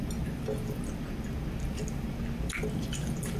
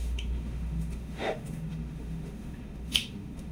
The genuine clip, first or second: first